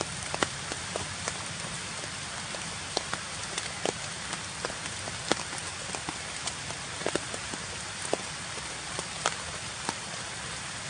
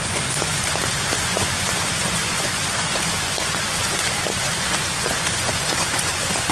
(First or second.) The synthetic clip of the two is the second